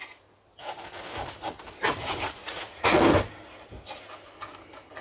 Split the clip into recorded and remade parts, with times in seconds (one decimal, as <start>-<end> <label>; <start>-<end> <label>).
0.0-2.4 recorded; 2.4-3.0 remade; 3.0-5.0 recorded